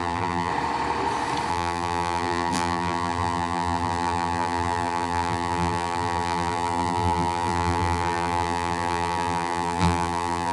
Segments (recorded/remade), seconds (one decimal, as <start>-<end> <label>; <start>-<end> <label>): 0.0-0.5 remade; 0.5-1.5 recorded; 1.5-10.5 remade